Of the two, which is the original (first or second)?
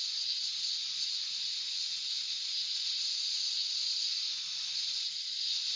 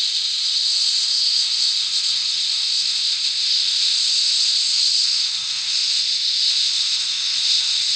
first